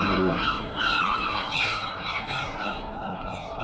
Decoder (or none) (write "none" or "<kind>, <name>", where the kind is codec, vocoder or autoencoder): codec, SNAC